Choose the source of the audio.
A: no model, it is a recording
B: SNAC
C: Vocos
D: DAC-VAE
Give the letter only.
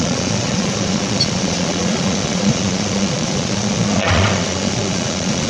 C